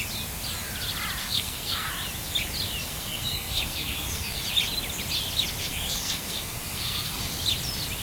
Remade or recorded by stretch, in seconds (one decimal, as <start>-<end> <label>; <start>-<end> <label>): 0.0-1.2 recorded; 1.2-1.9 remade; 1.9-2.8 recorded; 2.8-4.4 remade; 4.4-5.6 recorded; 5.6-7.3 remade; 7.3-8.0 recorded